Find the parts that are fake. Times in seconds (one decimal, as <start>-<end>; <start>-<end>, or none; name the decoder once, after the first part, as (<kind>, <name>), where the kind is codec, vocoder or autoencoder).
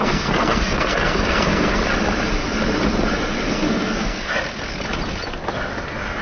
0.0-1.8 (codec, SNAC); 3.5-4.3